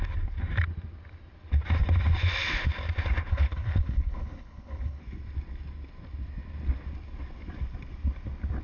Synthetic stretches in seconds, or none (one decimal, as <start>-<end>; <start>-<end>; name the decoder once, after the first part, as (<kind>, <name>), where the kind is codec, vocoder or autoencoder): 3.3-5.0 (codec, HILCodec)